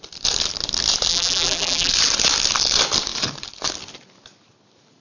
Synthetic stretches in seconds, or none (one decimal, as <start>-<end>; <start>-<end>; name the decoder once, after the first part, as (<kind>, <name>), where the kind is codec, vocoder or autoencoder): 1.1-1.9 (vocoder, BigVGAN v2)

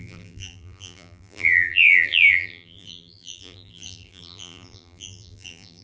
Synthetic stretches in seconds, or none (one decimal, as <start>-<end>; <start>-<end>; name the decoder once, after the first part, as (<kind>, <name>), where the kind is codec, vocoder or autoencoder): 0.0-5.8 (vocoder, BigVGAN v2)

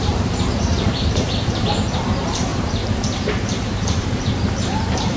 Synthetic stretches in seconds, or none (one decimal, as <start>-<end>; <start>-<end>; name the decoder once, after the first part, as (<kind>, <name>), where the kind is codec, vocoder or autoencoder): 0.0-5.2 (vocoder, BigVGAN v2)

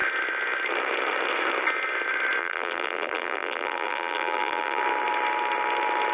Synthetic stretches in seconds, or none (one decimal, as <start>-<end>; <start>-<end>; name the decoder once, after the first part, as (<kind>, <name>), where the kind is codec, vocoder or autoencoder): 2.4-4.8 (vocoder, BigVGAN v2)